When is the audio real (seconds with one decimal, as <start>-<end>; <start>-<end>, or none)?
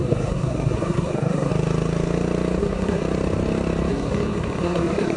1.5-2.6; 3.0-3.9